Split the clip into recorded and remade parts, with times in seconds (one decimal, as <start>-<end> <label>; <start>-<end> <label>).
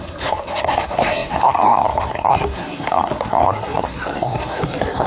0.0-5.1 remade